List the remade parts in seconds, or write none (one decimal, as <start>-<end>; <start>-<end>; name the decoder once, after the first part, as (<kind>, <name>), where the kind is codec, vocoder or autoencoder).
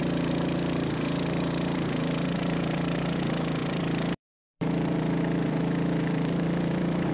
0.0-7.1 (vocoder, BigVGAN v2)